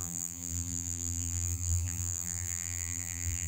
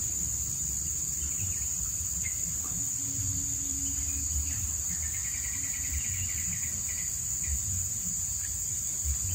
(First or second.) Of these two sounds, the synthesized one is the first